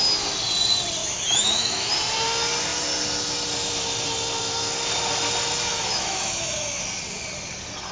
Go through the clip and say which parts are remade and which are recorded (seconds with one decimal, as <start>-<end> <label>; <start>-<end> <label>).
0.0-1.0 recorded; 1.0-1.9 remade; 1.9-5.7 recorded; 5.7-6.8 remade; 6.8-7.9 recorded